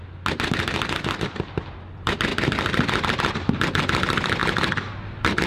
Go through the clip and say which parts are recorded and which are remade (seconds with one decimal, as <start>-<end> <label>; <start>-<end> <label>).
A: 0.0-5.5 recorded